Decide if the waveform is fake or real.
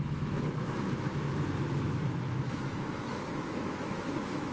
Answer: fake